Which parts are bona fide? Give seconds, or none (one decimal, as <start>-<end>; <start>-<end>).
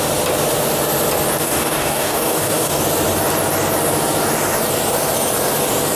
0.0-1.4; 2.8-6.0